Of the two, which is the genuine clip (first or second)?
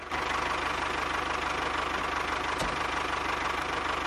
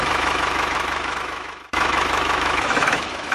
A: first